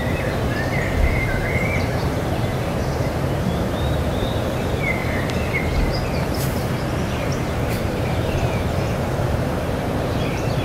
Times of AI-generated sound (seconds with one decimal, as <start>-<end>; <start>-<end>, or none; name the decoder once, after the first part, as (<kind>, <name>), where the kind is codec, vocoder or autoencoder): 0.0-5.0 (vocoder, BigVGAN v2); 6.0-10.6